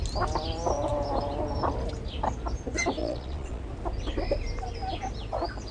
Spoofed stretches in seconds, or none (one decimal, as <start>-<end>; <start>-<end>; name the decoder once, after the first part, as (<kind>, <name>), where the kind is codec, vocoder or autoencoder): 3.0-3.6 (vocoder, Vocos)